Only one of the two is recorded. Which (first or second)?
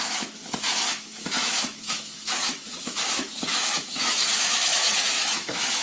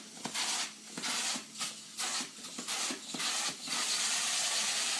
second